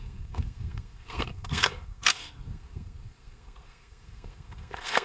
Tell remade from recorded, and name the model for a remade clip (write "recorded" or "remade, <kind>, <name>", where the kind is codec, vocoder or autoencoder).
remade, codec, SNAC